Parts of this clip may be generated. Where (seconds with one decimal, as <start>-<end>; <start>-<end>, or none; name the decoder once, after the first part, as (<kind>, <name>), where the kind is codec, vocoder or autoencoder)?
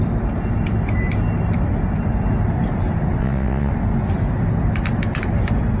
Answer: 3.2-3.7 (vocoder, WaveNeXt)